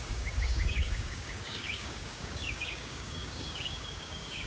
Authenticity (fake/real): fake